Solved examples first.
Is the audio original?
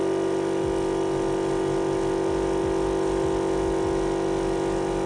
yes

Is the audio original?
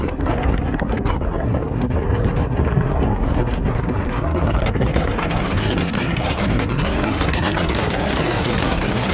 no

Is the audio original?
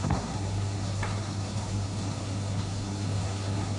no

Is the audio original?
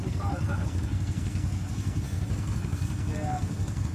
no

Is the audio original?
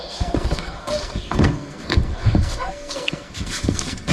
no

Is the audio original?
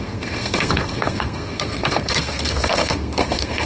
no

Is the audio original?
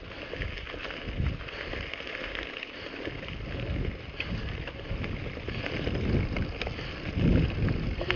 yes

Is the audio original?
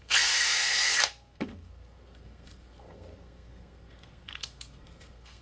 no